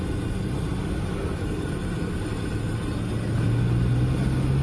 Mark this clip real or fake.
real